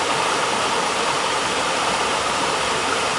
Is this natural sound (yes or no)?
no